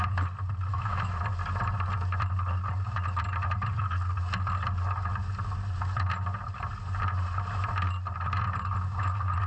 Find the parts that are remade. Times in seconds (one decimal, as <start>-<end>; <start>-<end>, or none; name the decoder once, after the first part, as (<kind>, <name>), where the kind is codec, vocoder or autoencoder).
0.7-1.2 (autoencoder, DAC-VAE)